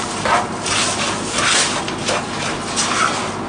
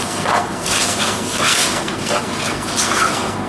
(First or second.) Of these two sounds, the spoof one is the second